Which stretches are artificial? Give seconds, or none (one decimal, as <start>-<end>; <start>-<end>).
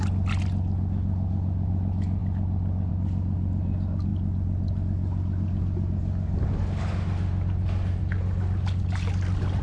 none